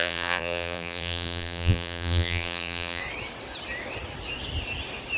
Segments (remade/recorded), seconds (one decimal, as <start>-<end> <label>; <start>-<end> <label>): 0.0-3.0 remade; 3.0-5.2 recorded

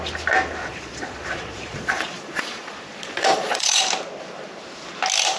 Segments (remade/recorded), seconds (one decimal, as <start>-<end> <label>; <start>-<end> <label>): 0.0-0.6 recorded; 0.6-3.8 remade; 3.8-5.4 recorded

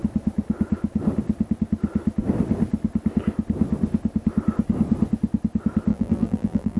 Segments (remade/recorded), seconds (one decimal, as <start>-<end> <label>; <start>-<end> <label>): 0.0-5.9 recorded; 5.9-6.8 remade

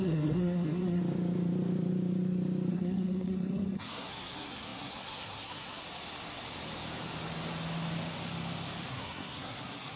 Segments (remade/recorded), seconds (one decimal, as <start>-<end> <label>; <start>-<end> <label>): 0.0-1.0 remade; 1.0-2.7 recorded; 2.7-5.8 remade; 5.8-8.9 recorded; 8.9-10.0 remade